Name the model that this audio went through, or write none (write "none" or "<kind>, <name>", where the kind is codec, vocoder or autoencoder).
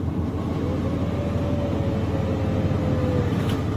none